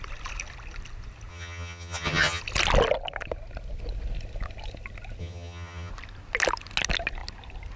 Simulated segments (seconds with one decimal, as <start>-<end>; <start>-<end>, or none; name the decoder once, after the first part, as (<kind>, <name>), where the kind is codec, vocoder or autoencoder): 1.3-2.4 (vocoder, HiFi-GAN); 5.2-5.9